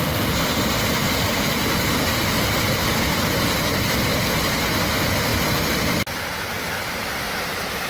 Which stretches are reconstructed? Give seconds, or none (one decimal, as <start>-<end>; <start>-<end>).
none